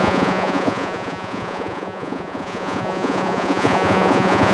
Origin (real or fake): fake